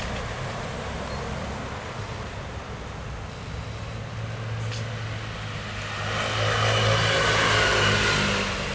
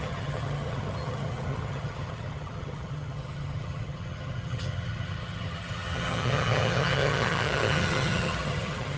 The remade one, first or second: second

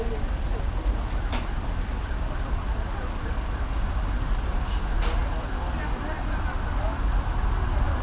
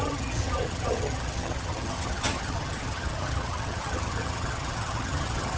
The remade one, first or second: second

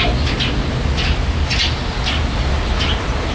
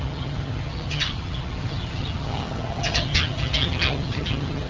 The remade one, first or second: second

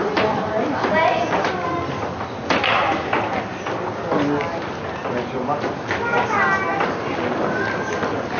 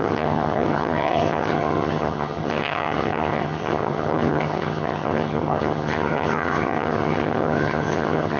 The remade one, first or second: second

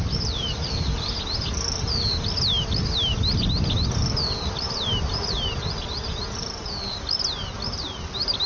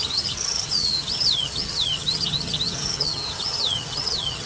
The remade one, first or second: second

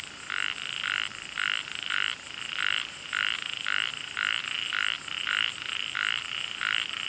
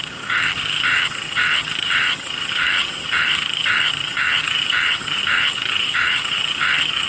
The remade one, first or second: second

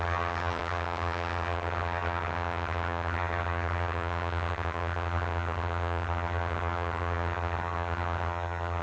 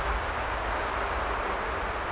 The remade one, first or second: first